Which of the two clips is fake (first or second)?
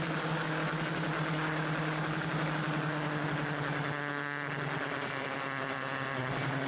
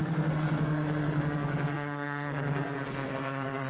second